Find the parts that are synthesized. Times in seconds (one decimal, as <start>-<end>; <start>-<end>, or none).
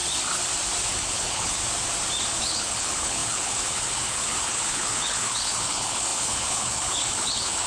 0.9-1.6; 2.4-7.7